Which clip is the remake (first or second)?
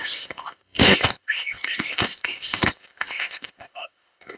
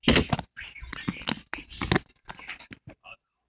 first